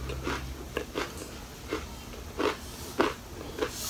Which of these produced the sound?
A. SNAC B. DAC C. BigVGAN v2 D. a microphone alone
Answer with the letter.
D